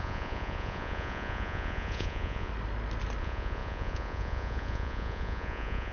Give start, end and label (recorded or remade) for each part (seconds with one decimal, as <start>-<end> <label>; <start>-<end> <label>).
0.0-2.5 remade; 2.5-3.2 recorded; 3.2-5.9 remade